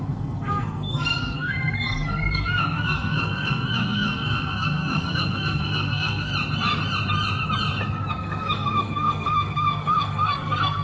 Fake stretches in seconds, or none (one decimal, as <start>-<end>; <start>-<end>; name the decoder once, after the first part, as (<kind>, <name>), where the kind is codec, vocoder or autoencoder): 0.0-6.3 (codec, SNAC); 8.1-10.8